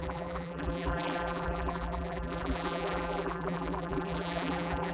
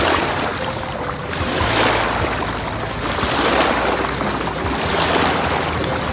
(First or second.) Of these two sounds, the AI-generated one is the first